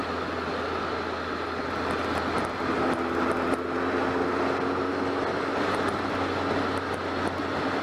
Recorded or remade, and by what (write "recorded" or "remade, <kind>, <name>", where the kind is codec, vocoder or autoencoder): recorded